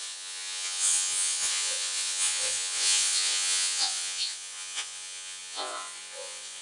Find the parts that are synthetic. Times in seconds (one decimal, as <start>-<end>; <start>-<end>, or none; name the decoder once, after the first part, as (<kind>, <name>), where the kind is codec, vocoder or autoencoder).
0.0-6.6 (vocoder, Vocos)